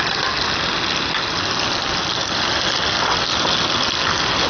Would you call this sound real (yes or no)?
yes